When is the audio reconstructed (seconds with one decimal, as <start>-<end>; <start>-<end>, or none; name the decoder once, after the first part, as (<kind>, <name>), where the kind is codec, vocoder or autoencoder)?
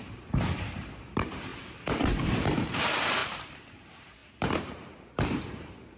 0.0-6.0 (vocoder, BigVGAN v2)